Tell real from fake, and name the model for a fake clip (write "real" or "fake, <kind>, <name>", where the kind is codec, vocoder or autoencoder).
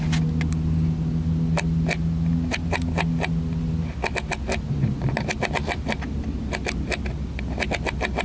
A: real